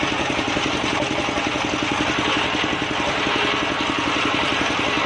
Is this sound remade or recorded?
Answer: recorded